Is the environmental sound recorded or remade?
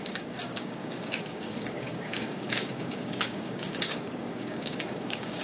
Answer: remade